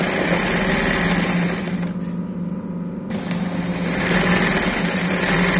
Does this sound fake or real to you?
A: real